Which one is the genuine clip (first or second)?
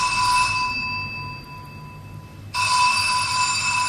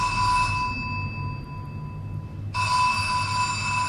second